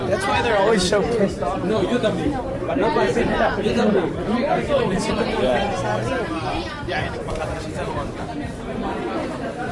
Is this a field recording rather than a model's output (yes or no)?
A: no